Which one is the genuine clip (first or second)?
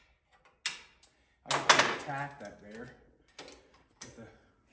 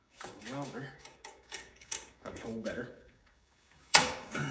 first